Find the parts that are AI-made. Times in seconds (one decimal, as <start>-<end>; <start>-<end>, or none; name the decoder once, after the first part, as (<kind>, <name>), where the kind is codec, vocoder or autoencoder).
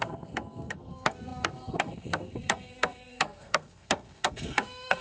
0.0-5.0 (codec, SNAC)